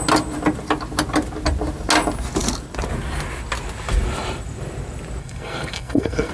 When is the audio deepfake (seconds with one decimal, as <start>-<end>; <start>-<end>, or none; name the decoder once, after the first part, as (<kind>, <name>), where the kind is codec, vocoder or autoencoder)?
5.2-6.3 (codec, SNAC)